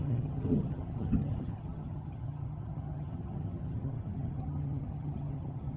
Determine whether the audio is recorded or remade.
remade